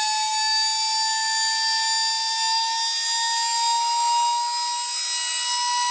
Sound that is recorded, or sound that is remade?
recorded